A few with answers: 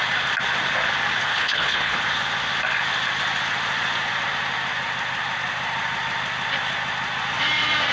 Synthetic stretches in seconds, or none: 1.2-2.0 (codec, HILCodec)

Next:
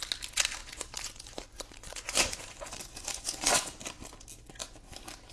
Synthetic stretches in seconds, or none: 0.6-3.8 (vocoder, Vocos)